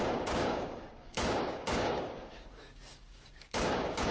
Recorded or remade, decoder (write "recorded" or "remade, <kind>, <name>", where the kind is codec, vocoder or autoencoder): remade, codec, DAC